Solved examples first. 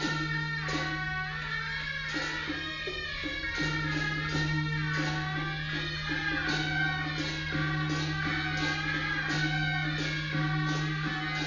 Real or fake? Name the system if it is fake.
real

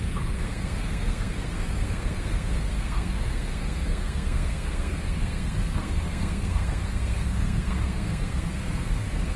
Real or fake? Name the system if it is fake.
fake, codec, SNAC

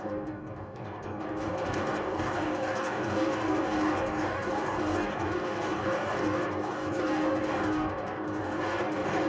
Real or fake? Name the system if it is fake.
fake, codec, DAC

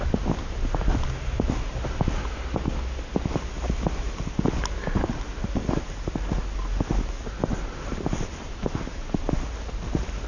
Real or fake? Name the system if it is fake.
real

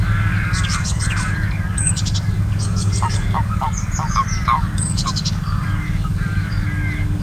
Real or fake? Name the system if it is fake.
fake, codec, DAC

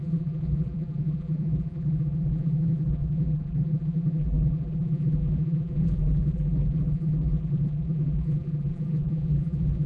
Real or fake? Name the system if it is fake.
fake, vocoder, BigVGAN v2